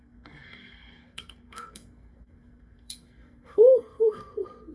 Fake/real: fake